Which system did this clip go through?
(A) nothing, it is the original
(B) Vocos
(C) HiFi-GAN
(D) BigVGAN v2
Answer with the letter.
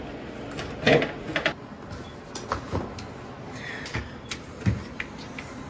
A